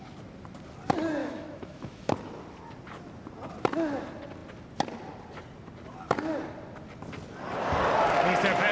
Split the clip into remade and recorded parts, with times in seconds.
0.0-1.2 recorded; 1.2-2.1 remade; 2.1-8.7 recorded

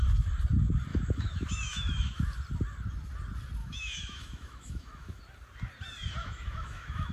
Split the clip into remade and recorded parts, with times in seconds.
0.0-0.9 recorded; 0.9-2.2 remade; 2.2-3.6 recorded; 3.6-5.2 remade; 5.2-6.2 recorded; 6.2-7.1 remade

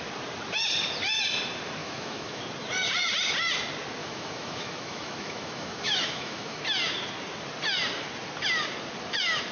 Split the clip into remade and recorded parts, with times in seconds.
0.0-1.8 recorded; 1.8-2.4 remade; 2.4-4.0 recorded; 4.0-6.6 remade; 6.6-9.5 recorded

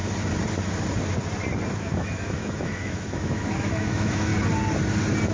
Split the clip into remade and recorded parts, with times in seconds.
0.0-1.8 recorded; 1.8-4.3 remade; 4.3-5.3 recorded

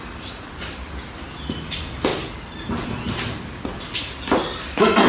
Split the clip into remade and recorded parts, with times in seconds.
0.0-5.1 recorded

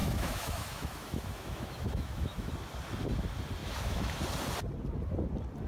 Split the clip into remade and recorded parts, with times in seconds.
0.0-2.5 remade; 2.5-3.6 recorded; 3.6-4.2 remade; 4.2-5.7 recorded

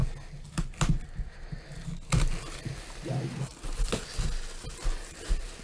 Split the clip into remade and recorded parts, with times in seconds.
0.0-5.6 recorded

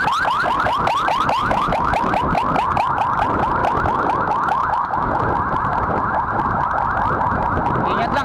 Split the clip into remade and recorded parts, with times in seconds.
0.0-1.4 recorded; 1.4-2.1 remade; 2.1-3.6 recorded; 3.6-5.2 remade; 5.2-8.2 recorded